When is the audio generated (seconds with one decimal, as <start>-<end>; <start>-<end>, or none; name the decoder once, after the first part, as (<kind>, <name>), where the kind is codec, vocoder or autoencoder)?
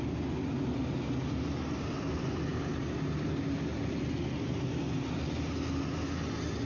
none